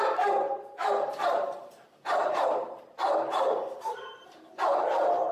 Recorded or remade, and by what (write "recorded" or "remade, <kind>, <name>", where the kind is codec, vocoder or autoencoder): remade, vocoder, BigVGAN v2